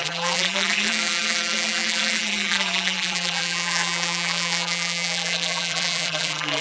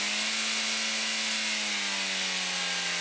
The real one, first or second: second